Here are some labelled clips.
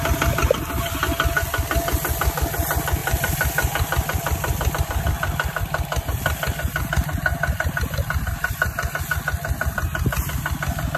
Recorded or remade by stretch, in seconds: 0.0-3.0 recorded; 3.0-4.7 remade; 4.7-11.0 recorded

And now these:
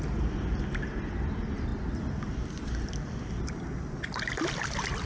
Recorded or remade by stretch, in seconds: 0.0-5.1 recorded

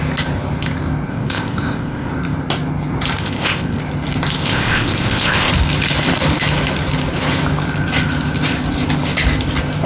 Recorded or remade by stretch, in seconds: 0.0-1.1 recorded; 1.1-2.1 remade; 2.1-3.2 recorded; 3.2-3.8 remade; 3.8-4.4 recorded; 4.4-5.5 remade; 5.5-9.9 recorded

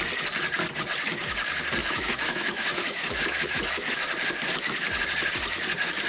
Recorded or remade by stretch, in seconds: 0.0-1.8 recorded; 1.8-3.6 remade; 3.6-6.1 recorded

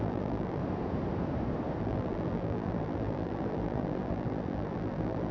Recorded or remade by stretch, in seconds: 0.0-0.6 remade; 0.6-1.8 recorded; 1.8-5.3 remade

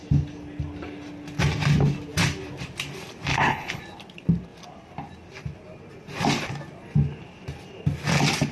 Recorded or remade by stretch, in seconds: 0.0-3.3 recorded; 3.3-3.8 remade; 3.8-8.5 recorded

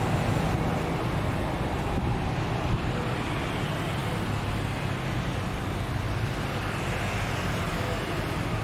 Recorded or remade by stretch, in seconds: 0.0-4.0 remade; 4.0-5.9 recorded; 5.9-8.6 remade

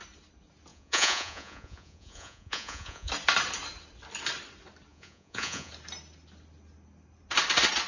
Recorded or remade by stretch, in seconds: 0.0-0.7 recorded; 0.7-3.1 remade; 3.1-4.9 recorded; 4.9-5.7 remade; 5.7-7.9 recorded